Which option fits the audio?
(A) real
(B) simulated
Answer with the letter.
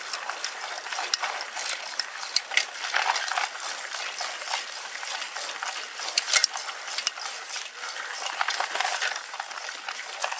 A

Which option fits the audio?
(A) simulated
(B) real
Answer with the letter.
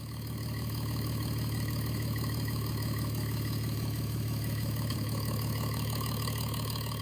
A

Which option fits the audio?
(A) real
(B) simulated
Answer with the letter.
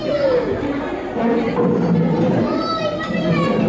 B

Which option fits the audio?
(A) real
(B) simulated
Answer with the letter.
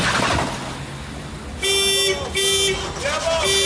A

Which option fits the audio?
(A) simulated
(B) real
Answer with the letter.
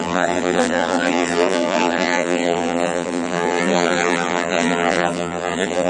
A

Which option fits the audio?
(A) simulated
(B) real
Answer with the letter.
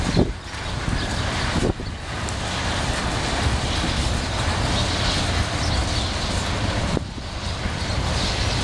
B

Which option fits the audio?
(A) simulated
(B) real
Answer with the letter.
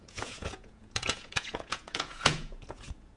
A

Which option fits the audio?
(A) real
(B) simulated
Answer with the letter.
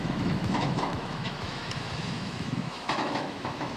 B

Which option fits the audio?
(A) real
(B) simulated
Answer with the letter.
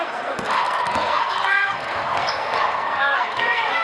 B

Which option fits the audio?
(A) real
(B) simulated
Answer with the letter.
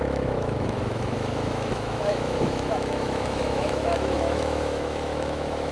B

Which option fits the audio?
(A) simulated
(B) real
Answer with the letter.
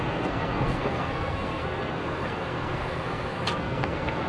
A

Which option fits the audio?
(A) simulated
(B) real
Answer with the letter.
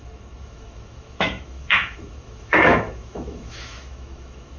A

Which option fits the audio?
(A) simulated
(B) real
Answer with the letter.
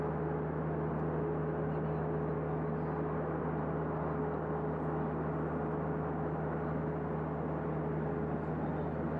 B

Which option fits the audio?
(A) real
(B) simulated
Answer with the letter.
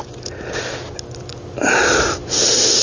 A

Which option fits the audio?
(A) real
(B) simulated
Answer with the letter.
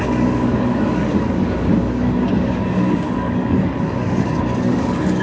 B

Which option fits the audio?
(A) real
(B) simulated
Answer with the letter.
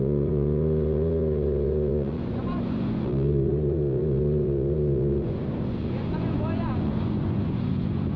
B